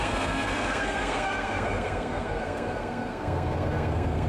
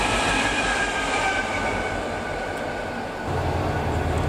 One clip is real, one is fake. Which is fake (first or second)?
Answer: first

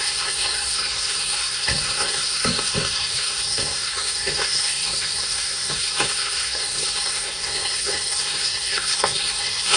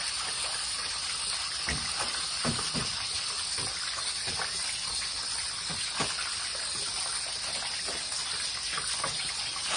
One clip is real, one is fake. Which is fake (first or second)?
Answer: first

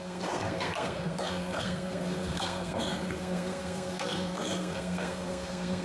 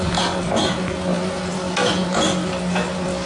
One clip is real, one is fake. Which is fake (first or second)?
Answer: first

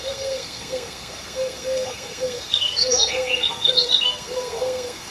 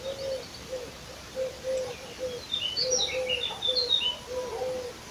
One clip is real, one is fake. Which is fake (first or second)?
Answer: first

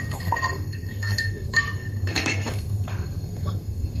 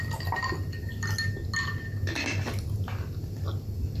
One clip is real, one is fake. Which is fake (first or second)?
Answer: first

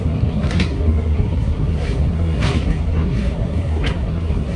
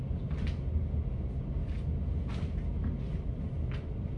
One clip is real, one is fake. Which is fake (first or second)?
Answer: first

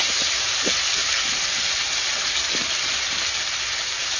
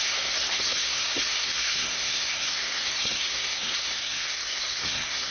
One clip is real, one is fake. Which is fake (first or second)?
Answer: second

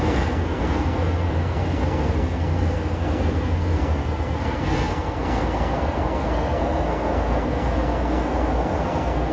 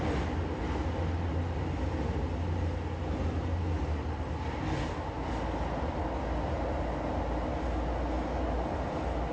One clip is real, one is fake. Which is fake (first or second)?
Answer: first